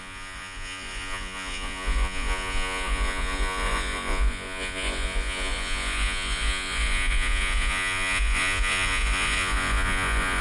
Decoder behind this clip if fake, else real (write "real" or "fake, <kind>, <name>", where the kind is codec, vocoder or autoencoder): fake, vocoder, Vocos